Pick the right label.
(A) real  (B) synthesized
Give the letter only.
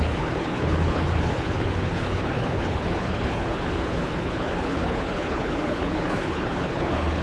B